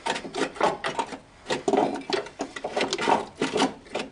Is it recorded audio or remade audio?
recorded